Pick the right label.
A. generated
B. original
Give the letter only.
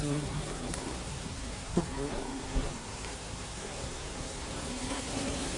A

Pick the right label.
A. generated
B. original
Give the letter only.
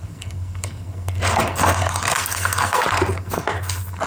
A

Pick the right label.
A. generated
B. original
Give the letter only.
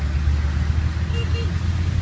B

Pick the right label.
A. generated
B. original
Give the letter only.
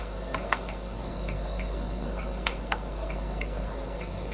A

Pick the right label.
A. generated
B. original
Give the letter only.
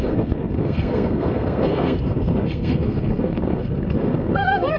A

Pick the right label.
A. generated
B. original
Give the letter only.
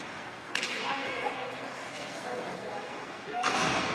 A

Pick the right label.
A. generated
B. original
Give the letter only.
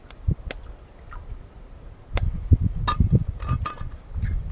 B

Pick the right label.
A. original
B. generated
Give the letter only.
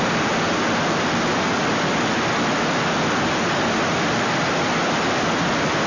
A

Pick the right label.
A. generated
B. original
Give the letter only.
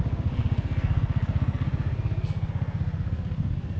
A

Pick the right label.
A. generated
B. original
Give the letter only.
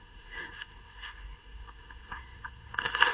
A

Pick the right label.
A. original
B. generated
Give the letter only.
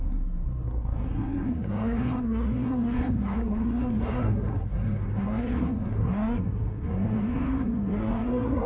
B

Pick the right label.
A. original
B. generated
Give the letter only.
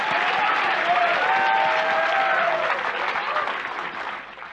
A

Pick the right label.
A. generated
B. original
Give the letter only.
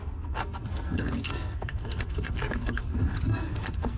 A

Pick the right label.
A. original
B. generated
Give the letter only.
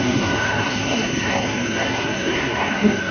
B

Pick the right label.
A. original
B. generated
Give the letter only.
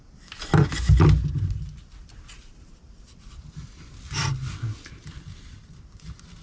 A